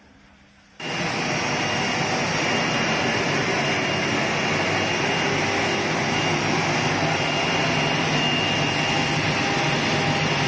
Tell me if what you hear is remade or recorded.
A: recorded